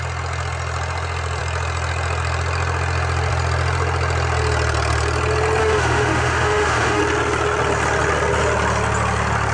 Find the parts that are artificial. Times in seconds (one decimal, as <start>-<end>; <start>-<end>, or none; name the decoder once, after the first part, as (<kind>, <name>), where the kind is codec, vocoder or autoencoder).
5.6-7.0 (autoencoder, DAC-VAE)